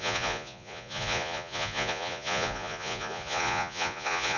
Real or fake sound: fake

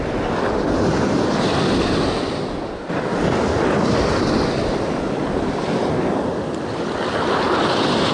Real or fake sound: real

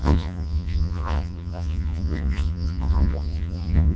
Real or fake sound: fake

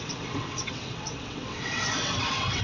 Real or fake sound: fake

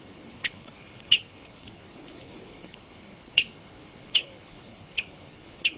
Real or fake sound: fake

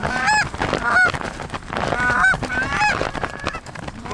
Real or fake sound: fake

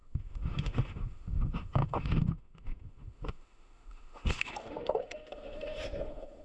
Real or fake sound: fake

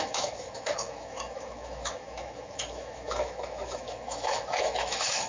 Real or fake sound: fake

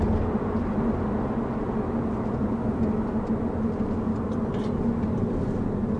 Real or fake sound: real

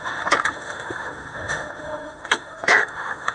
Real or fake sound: fake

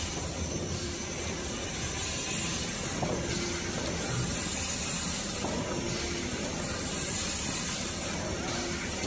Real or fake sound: real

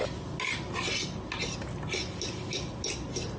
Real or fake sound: real